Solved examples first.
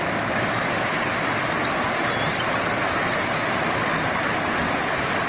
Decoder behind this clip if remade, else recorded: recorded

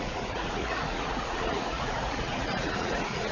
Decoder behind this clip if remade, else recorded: remade, vocoder, Vocos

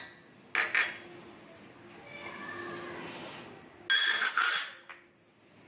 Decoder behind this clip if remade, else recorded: recorded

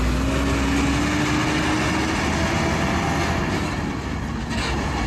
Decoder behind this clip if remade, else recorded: recorded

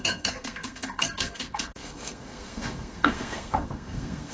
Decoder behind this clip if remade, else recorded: remade, codec, SNAC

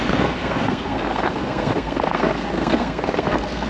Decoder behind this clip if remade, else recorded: remade, codec, SNAC